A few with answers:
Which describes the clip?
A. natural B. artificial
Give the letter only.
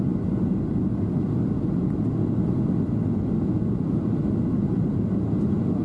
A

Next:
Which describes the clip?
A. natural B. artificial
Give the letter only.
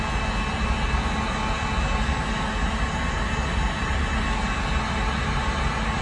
A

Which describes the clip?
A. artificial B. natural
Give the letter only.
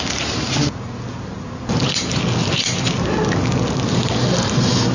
B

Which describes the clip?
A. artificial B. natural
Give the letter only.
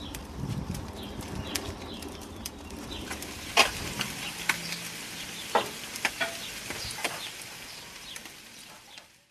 A